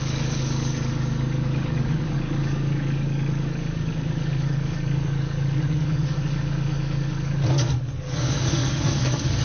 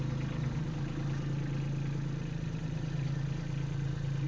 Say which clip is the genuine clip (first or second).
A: second